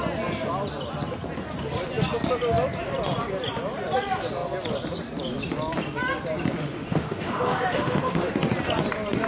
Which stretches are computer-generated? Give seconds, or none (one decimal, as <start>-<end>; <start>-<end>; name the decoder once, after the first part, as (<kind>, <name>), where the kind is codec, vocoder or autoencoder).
6.6-8.3 (autoencoder, DAC-VAE)